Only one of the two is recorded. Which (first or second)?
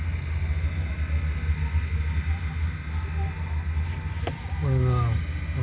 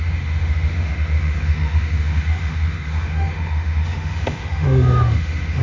first